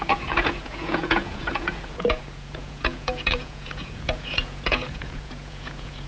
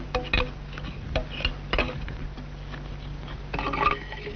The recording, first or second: second